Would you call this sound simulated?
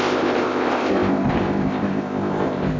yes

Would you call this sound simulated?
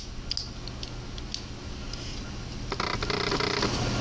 no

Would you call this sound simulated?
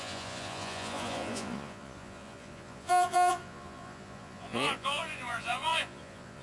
yes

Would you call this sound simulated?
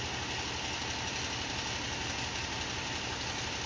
no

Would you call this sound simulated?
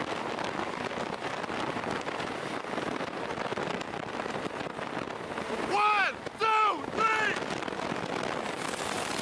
no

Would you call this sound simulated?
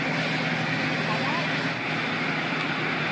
no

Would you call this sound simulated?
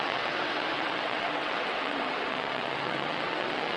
yes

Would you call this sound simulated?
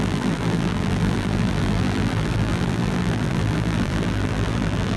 yes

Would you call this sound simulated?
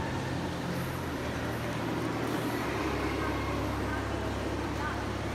no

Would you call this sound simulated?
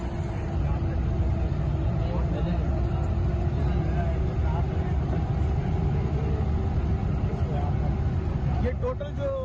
no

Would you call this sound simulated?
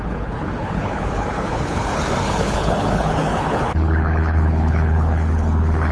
yes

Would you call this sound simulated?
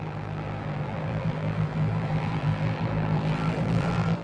yes